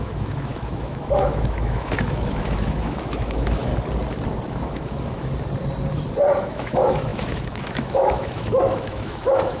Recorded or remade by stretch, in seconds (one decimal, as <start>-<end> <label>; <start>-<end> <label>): 0.0-3.7 remade; 3.7-4.5 recorded; 4.5-5.3 remade; 5.3-6.4 recorded; 6.4-9.6 remade